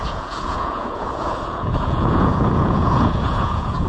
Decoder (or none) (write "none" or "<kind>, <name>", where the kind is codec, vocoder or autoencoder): vocoder, Vocos